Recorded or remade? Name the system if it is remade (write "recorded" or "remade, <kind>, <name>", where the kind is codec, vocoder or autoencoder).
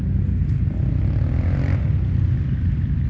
recorded